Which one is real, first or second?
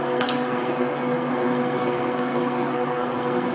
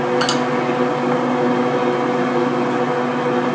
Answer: second